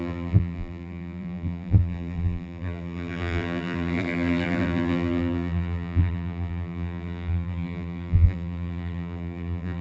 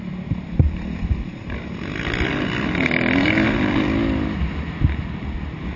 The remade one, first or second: first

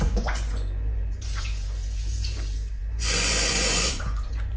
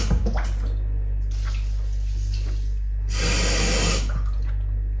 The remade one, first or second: first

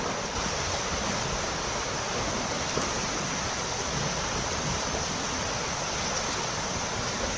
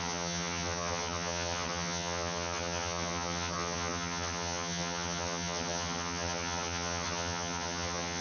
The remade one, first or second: second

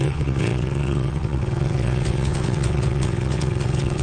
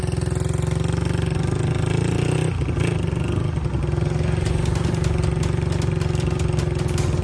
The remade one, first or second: first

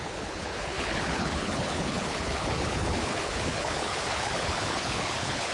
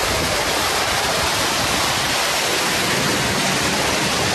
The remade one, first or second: first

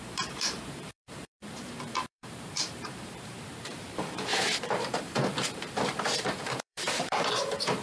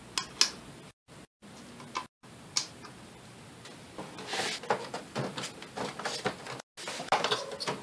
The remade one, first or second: first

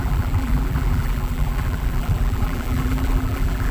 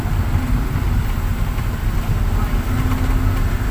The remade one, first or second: first